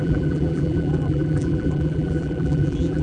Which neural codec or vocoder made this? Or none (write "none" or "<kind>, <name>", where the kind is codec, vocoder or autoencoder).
vocoder, BigVGAN v2